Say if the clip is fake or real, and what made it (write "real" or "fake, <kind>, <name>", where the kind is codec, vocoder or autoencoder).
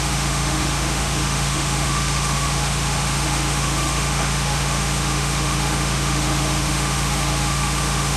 fake, autoencoder, DAC-VAE